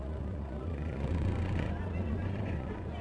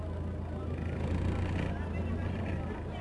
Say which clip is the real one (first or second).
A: second